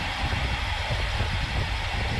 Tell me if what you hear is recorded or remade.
recorded